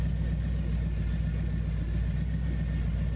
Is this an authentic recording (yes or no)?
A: yes